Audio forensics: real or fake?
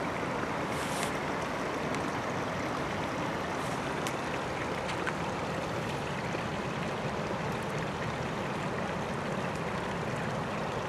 real